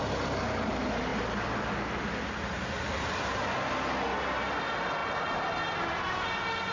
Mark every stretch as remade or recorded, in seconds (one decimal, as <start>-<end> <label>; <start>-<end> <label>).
0.0-6.7 recorded